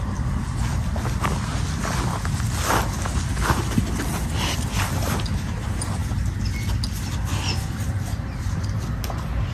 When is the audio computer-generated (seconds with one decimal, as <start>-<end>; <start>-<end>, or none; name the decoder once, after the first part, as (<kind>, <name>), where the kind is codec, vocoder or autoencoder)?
none